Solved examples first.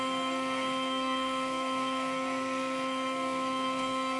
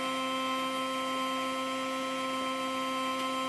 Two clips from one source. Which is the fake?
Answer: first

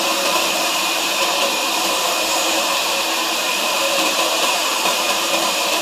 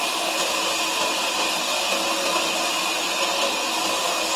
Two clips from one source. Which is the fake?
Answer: first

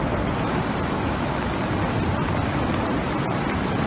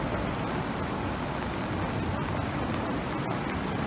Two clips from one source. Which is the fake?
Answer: first